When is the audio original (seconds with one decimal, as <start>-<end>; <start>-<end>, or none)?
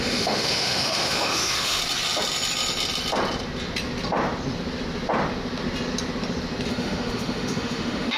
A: 1.8-6.7